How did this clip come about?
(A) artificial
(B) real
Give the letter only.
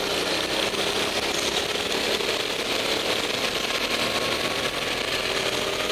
B